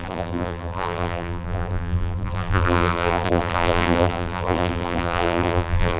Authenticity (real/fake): fake